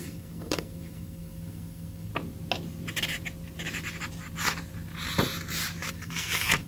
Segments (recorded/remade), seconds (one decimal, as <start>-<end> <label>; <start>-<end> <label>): 0.0-2.1 remade; 2.1-5.9 recorded; 5.9-6.7 remade